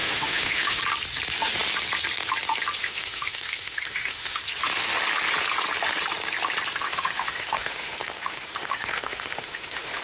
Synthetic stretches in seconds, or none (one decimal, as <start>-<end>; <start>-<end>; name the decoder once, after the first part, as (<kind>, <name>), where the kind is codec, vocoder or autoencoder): 0.0-0.8 (autoencoder, DAC-VAE); 2.8-4.4; 6.8-10.0